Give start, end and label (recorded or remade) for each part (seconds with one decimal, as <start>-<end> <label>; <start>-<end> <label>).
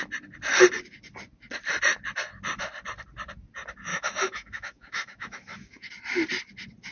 0.0-3.9 recorded; 3.9-5.9 remade; 5.9-6.9 recorded